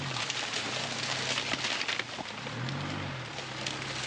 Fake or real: real